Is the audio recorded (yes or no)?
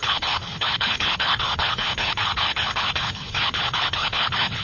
no